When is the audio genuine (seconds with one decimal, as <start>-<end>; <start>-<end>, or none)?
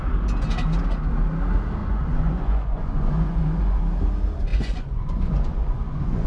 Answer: 0.0-1.8; 3.8-4.5